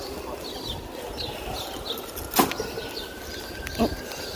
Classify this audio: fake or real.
real